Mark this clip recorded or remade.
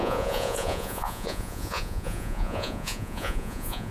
remade